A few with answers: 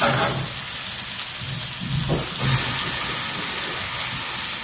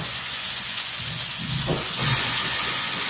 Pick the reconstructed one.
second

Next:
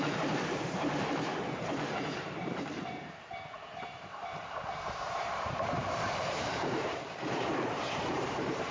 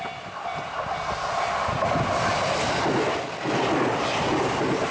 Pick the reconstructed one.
first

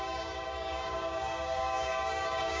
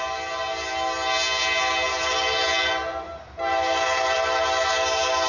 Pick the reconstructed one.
first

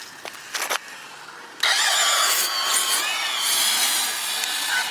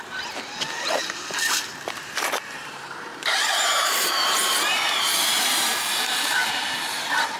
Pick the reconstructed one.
second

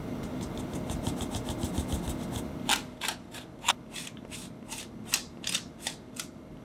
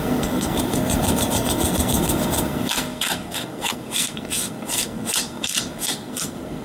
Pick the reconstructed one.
second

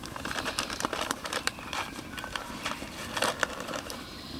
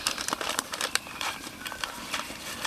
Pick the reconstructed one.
second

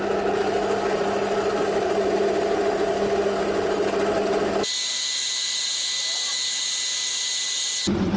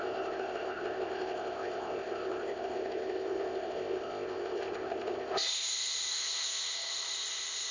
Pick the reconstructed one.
second